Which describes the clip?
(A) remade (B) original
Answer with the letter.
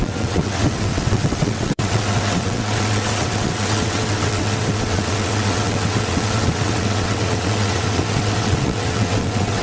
A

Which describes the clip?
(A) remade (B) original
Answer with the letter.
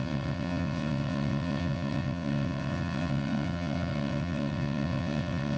A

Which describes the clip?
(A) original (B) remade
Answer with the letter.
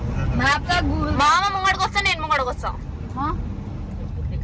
A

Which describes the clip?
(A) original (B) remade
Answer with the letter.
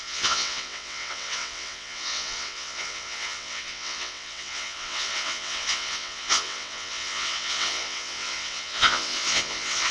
B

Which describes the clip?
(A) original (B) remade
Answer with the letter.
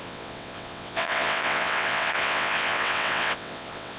B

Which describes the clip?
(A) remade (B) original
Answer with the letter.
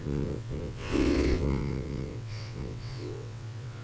A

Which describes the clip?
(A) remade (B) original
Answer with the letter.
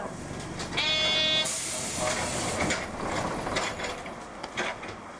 B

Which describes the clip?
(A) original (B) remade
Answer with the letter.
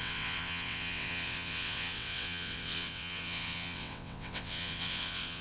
B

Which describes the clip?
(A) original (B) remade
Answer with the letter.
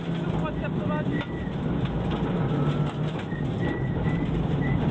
A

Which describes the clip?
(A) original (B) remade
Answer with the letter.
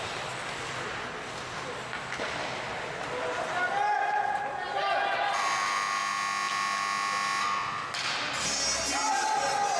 A